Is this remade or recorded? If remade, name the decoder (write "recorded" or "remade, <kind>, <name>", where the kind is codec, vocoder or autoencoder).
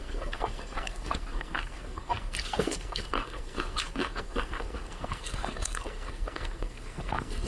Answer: remade, codec, SNAC